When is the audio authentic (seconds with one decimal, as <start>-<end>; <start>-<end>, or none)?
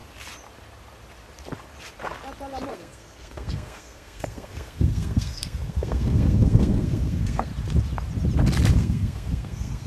0.0-2.7; 7.5-8.7